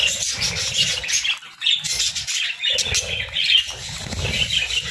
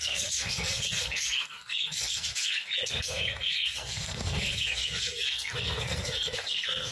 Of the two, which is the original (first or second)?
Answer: first